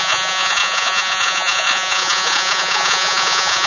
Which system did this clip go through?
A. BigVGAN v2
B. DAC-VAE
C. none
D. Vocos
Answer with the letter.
D